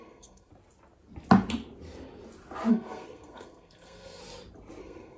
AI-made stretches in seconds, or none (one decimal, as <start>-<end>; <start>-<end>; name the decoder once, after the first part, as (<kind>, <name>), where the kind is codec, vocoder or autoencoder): 0.0-0.5 (codec, SNAC); 2.7-4.2; 4.8-5.2